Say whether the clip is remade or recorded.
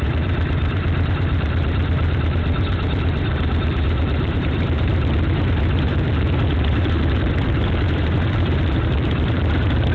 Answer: remade